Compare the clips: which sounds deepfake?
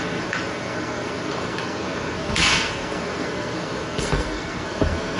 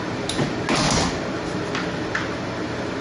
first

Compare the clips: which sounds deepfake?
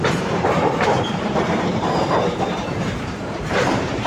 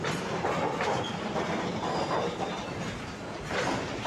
first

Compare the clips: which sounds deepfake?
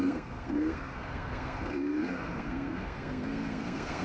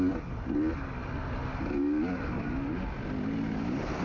first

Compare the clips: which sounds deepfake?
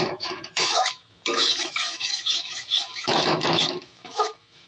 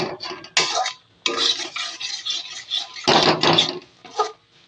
first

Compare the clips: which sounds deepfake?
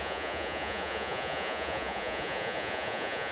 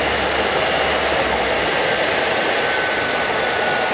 first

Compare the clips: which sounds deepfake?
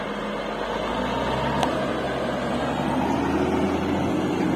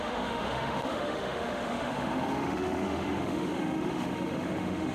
second